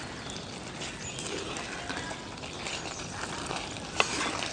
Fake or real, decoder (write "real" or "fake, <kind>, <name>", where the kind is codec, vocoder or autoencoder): real